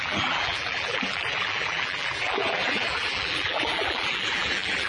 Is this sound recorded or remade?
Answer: remade